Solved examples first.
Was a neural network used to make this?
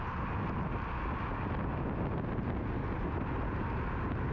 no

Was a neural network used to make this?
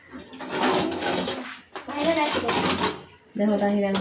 no